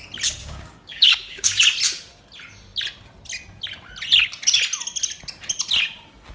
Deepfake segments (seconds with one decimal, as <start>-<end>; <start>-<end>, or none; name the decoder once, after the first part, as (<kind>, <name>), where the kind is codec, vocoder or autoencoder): 0.4-1.6 (codec, DAC)